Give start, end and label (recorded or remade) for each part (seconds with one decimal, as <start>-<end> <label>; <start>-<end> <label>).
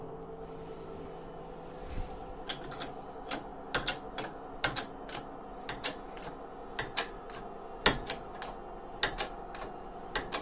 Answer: 0.0-10.4 recorded